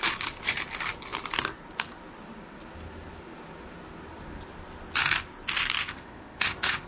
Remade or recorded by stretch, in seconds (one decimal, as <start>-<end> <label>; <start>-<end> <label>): 0.0-5.8 recorded; 5.8-6.9 remade